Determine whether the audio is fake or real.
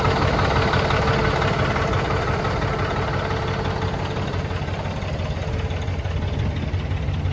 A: real